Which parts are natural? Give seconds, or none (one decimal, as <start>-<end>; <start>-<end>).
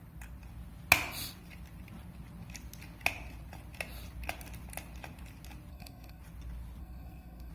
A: 0.0-5.7; 6.2-6.8